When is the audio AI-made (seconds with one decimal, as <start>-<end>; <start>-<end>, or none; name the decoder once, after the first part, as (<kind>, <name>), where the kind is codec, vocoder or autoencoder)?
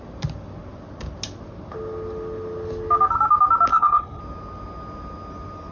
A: 3.7-4.2 (codec, HILCodec)